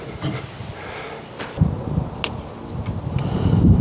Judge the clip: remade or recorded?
recorded